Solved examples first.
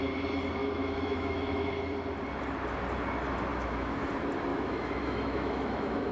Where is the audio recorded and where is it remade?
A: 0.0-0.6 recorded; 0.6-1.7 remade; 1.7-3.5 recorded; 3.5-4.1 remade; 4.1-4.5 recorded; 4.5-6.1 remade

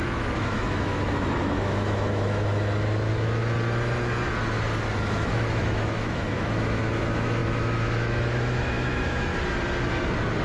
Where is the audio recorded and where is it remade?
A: 0.0-3.1 remade; 3.1-5.0 recorded; 5.0-9.3 remade; 9.3-10.4 recorded

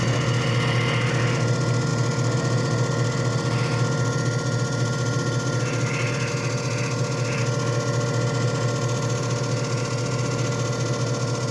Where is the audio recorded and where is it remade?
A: 0.0-11.5 recorded

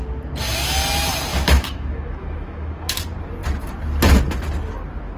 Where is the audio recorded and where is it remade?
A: 0.0-1.3 recorded; 1.3-3.0 remade; 3.0-5.2 recorded

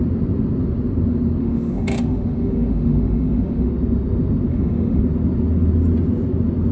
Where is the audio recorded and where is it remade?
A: 0.0-1.4 recorded; 1.4-3.7 remade; 3.7-4.5 recorded; 4.5-5.0 remade; 5.0-6.7 recorded